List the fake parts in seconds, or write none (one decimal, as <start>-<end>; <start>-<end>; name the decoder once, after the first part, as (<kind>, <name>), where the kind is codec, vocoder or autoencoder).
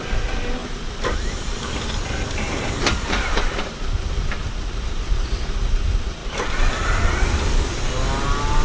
0.6-5.1 (vocoder, BigVGAN v2); 6.2-7.1